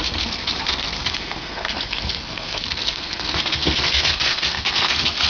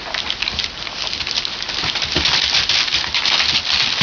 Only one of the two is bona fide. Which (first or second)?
second